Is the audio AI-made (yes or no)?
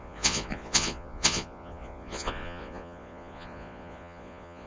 yes